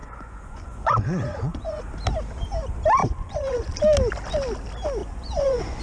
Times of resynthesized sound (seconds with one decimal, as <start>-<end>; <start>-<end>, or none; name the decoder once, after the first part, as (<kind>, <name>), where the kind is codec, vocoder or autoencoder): 0.0-1.8 (vocoder, Vocos); 3.0-3.7; 5.0-5.8